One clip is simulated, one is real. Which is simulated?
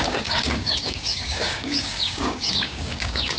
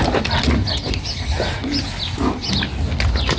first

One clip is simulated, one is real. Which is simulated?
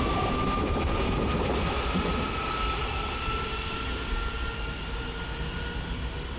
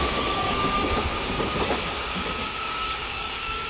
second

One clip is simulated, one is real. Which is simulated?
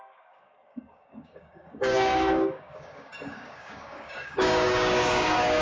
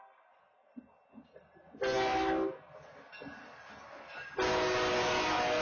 first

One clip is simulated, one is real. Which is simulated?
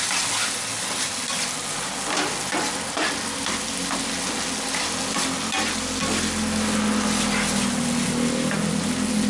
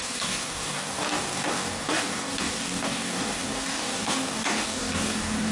second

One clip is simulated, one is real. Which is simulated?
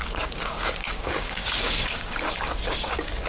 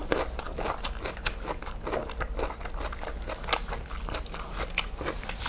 first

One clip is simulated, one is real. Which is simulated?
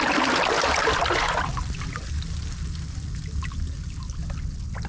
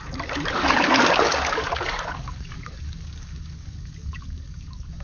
second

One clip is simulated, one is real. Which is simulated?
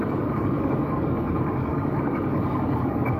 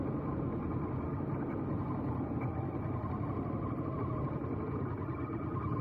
first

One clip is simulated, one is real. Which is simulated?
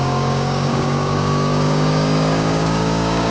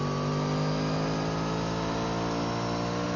first